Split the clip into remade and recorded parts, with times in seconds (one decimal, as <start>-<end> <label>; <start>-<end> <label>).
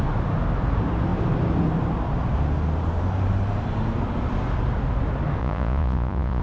0.0-5.4 recorded; 5.4-6.4 remade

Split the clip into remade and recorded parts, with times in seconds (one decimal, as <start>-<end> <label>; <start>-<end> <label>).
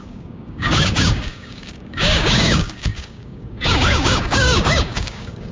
0.0-5.5 remade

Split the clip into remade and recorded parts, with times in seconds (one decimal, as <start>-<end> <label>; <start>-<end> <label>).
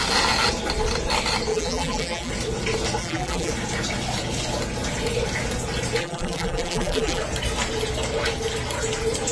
0.0-1.5 recorded; 1.5-2.3 remade; 2.3-3.0 recorded; 3.0-3.5 remade; 3.5-6.0 recorded; 6.0-7.2 remade; 7.2-9.3 recorded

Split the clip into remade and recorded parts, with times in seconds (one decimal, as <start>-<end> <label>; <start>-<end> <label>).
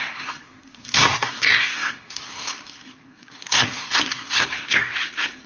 0.0-5.5 remade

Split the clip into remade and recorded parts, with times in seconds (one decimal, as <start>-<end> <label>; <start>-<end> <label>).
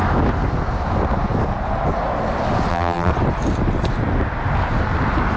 0.0-2.7 recorded; 2.7-3.1 remade; 3.1-5.4 recorded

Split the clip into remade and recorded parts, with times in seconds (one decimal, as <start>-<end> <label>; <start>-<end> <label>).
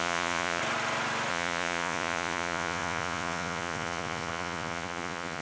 0.0-0.6 remade; 0.6-1.3 recorded; 1.3-5.4 remade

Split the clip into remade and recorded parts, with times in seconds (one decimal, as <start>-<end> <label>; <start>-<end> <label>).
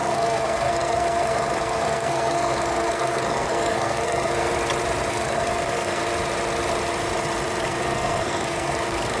0.0-4.5 remade; 4.5-5.1 recorded; 5.1-6.0 remade; 6.0-7.6 recorded; 7.6-9.2 remade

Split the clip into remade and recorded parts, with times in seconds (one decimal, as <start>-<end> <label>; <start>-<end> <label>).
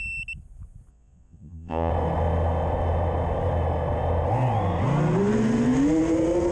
0.0-0.9 recorded; 0.9-1.9 remade; 1.9-6.5 recorded